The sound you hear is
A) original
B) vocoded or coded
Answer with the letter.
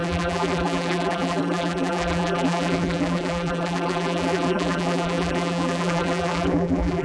B